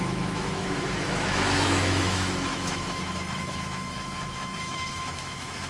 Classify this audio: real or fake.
fake